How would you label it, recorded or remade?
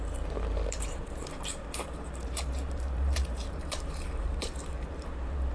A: remade